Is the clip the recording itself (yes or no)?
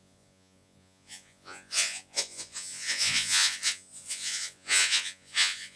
no